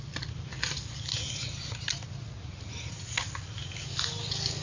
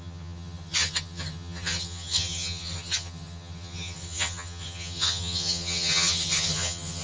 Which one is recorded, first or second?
first